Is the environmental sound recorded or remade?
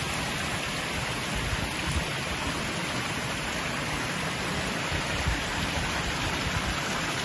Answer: recorded